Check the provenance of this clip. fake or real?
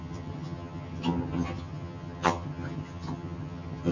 fake